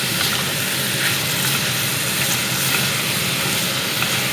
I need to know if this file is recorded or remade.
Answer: recorded